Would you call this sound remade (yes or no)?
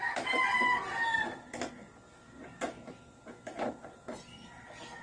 no